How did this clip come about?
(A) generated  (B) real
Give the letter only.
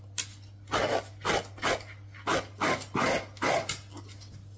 B